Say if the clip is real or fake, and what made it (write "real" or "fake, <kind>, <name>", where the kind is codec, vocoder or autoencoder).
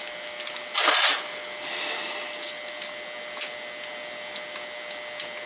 real